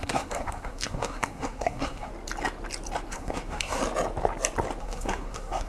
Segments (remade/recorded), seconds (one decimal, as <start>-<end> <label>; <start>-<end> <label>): 0.0-2.1 remade; 2.1-3.1 recorded; 3.1-3.8 remade; 3.8-4.8 recorded; 4.8-5.7 remade